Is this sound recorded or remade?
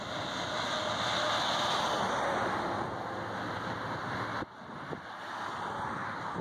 recorded